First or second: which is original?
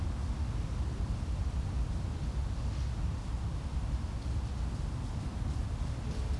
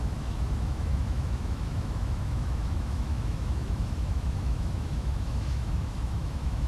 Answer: first